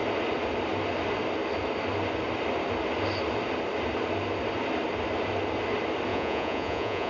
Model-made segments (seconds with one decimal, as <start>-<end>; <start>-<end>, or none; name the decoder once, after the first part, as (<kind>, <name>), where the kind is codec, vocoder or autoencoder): 6.1-7.1 (vocoder, Vocos)